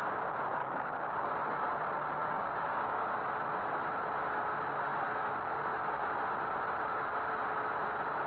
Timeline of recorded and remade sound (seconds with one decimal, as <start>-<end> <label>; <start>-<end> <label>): 0.0-0.6 recorded; 0.6-1.3 remade; 1.3-2.2 recorded; 2.2-3.1 remade; 3.1-8.3 recorded